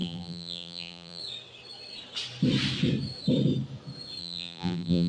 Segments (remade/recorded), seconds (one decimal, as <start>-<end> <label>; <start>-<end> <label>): 0.0-1.2 remade; 1.2-4.2 recorded; 4.2-5.1 remade